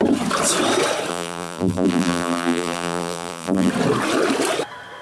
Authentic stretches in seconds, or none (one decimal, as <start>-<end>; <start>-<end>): 0.0-1.1; 3.7-5.0